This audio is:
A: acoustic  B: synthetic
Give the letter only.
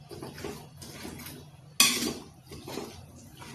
A